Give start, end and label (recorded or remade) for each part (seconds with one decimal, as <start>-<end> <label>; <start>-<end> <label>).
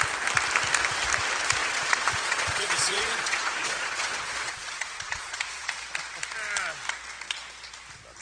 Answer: 0.0-1.6 recorded; 1.6-5.7 remade; 5.7-8.2 recorded